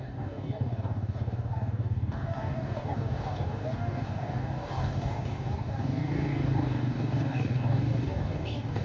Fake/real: fake